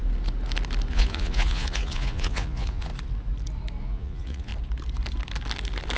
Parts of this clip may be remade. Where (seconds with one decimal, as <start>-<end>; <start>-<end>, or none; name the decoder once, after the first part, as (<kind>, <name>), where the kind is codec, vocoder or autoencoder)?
0.9-2.9 (vocoder, Vocos); 3.8-4.5